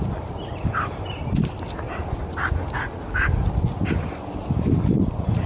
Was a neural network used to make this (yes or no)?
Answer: no